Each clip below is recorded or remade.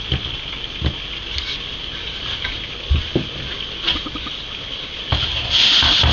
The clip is recorded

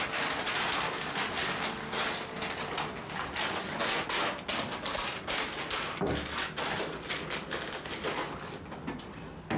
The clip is recorded